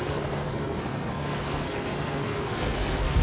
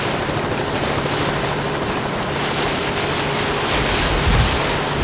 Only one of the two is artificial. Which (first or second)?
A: first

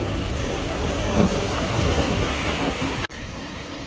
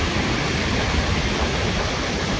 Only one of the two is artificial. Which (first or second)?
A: first